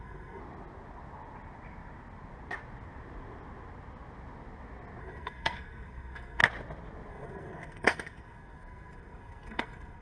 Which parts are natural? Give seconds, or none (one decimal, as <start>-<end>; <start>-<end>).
0.4-5.0; 6.4-7.1